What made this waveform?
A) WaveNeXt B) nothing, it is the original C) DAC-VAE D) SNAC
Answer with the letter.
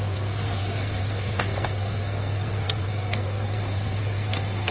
D